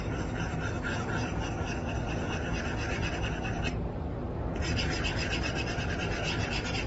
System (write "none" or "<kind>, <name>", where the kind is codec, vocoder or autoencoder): none